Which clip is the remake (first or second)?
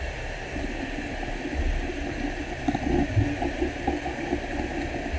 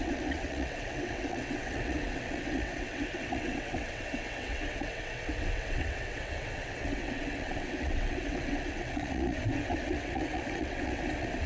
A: second